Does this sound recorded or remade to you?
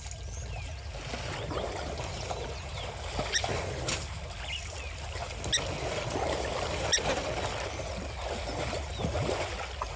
recorded